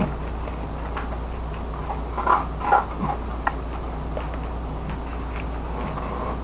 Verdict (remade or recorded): recorded